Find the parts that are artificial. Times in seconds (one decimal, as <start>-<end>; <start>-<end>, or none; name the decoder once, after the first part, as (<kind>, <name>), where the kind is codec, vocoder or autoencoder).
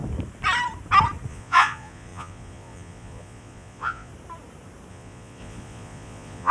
1.3-4.1 (vocoder, Vocos); 4.9-6.5